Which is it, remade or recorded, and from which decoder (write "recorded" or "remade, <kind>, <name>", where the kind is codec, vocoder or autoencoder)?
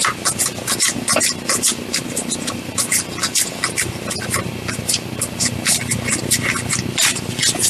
remade, vocoder, BigVGAN v2